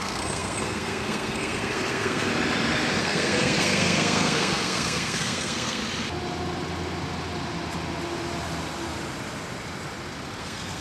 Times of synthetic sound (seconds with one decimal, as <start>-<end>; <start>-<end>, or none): 0.0-2.3; 3.0-5.8; 10.4-10.8